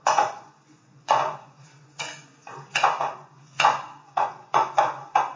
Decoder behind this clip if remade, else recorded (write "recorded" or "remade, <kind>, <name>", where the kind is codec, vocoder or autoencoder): remade, vocoder, Vocos